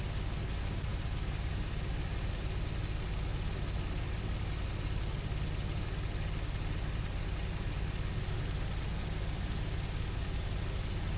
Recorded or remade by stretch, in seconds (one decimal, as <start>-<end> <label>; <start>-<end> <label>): 0.0-11.2 recorded